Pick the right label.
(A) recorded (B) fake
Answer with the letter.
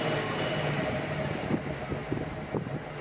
A